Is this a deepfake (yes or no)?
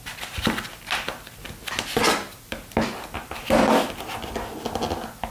no